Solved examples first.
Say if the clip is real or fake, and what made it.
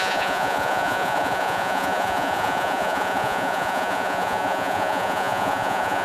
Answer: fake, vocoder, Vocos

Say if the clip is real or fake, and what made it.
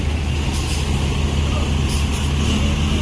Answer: real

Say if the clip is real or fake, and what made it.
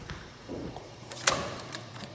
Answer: fake, vocoder, Vocos